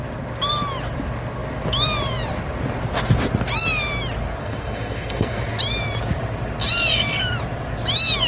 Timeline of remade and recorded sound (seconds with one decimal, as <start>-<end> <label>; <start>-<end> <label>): 0.0-4.4 recorded; 4.4-5.5 remade; 5.5-8.3 recorded